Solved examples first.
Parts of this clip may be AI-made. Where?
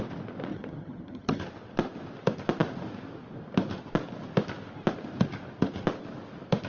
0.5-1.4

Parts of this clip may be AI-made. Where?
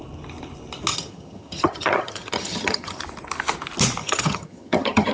0.9-3.0; 4.0-5.1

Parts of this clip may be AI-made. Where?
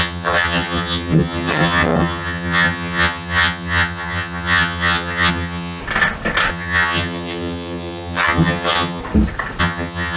0.0-5.8; 6.5-9.0; 9.6-10.2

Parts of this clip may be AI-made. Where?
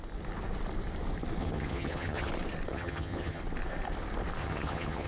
1.4-2.3; 2.7-3.4; 4.4-5.1